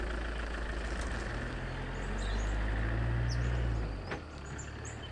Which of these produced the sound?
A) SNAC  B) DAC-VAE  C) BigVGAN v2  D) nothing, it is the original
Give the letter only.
D